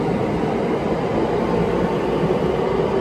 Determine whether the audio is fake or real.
real